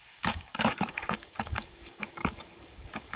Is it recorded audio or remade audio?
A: remade